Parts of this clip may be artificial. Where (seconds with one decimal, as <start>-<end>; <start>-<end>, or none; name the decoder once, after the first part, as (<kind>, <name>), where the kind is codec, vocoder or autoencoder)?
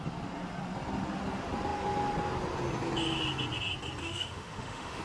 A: 4.0-5.0 (autoencoder, DAC-VAE)